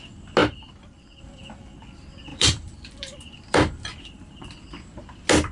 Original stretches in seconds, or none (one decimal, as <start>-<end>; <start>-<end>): 0.0-0.4; 1.2-2.3; 3.9-5.5